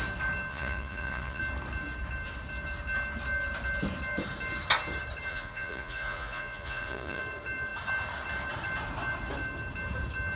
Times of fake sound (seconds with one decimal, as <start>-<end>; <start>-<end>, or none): 0.5-1.4; 5.3-7.2